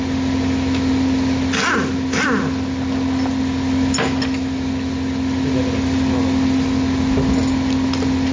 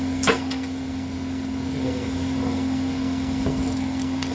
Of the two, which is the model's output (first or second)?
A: second